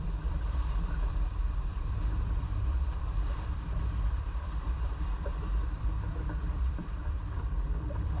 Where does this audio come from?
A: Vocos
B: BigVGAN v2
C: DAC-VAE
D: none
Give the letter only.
B